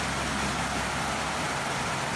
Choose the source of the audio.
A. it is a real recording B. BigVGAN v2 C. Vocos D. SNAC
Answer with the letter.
A